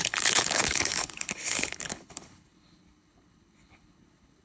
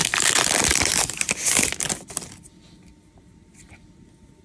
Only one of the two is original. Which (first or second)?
second